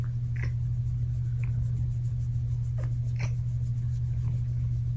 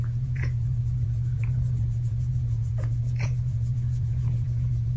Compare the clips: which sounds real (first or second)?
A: first